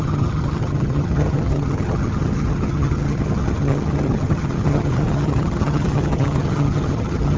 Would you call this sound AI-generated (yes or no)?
yes